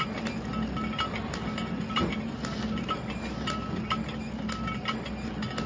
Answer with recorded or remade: recorded